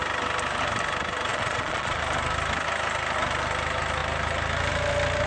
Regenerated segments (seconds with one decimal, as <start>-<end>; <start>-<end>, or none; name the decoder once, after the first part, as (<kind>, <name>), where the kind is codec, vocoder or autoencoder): 1.3-2.0 (vocoder, Vocos)